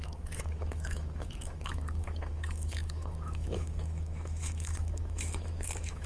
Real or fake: fake